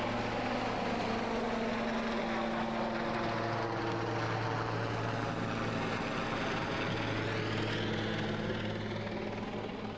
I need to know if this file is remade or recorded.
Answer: recorded